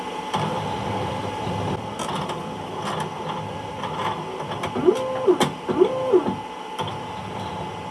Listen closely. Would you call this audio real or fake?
real